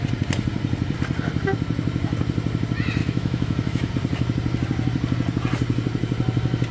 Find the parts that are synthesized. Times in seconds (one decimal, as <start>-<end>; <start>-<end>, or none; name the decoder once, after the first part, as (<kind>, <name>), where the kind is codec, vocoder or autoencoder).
3.0-3.9 (autoencoder, DAC-VAE)